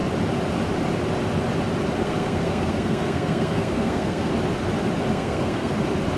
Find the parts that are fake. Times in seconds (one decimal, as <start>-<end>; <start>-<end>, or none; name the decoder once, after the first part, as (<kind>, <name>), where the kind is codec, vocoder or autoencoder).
2.0-4.3 (codec, SNAC); 5.1-5.7